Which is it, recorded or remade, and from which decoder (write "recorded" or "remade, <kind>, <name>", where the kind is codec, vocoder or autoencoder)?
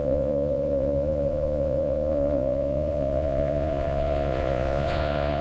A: remade, vocoder, Vocos